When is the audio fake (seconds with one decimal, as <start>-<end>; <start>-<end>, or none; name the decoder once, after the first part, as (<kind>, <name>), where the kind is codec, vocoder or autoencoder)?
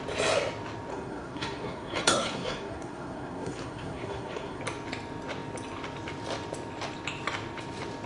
0.9-4.6 (codec, SNAC)